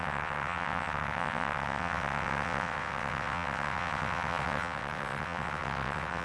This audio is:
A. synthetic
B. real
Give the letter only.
A